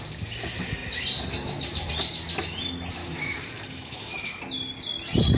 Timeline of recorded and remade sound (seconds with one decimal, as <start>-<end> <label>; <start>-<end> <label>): 0.0-3.0 recorded; 3.0-4.1 remade; 4.1-5.4 recorded